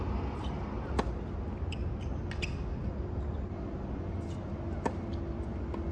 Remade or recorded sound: recorded